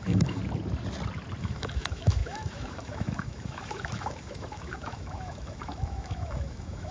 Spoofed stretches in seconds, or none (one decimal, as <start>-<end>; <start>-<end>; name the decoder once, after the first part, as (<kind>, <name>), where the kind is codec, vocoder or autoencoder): 0.0-0.4 (autoencoder, DAC-VAE); 1.4-6.9